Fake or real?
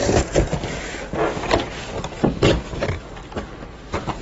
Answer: real